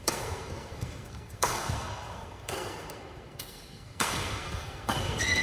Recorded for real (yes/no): no